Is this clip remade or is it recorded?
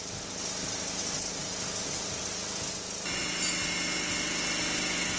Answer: recorded